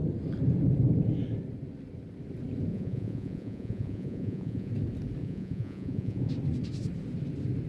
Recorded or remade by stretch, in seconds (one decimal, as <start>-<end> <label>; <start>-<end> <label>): 0.0-2.7 recorded; 2.7-4.7 remade; 4.7-5.2 recorded; 5.2-6.3 remade; 6.3-7.7 recorded